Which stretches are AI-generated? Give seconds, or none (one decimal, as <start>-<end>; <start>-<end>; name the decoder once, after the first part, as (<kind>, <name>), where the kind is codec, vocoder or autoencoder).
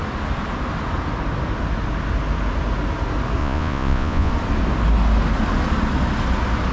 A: 3.4-4.3 (vocoder, Vocos)